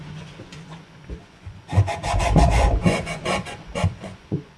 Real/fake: fake